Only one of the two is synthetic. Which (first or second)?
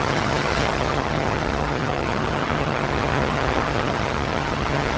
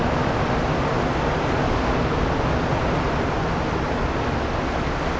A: first